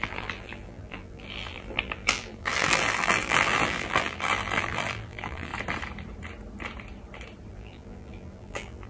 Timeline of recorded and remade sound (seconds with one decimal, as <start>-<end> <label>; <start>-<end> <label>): 0.0-5.5 remade; 5.5-7.5 recorded; 7.5-8.9 remade